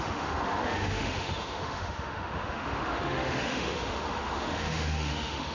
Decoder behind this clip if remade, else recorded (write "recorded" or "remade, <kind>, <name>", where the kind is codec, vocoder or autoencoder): remade, autoencoder, DAC-VAE